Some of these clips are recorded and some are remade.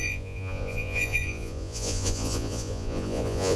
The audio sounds remade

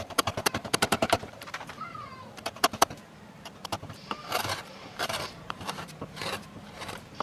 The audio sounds remade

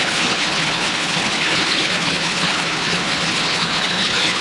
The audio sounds remade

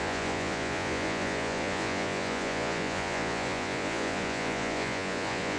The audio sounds remade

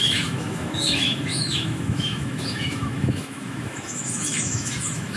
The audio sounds remade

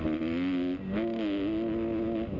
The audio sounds recorded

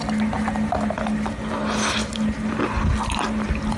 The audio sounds recorded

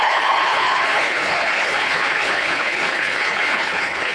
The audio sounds remade